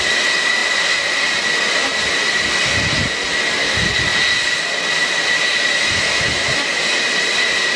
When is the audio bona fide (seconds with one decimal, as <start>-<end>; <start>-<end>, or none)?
0.0-4.1; 4.6-7.8